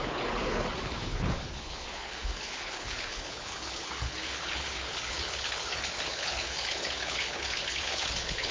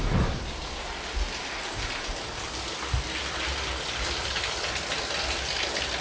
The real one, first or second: second